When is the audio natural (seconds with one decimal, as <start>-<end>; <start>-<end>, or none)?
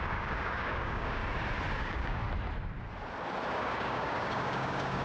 1.2-1.7; 2.2-3.5